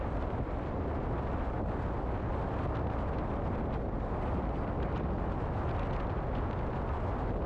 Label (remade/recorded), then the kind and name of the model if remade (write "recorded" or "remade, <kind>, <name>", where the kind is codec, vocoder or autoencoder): recorded